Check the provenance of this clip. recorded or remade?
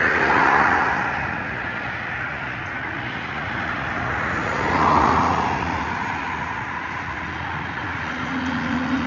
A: remade